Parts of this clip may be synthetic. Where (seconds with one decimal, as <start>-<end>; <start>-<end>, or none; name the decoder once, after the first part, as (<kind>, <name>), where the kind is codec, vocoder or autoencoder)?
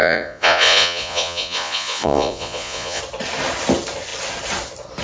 0.0-3.0 (vocoder, Vocos)